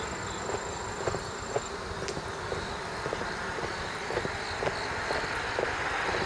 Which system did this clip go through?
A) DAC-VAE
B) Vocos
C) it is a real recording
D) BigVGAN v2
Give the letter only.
C